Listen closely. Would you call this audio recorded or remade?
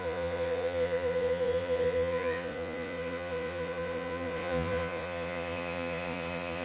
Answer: remade